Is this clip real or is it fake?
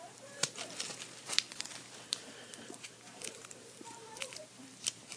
fake